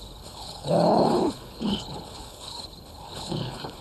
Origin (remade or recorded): remade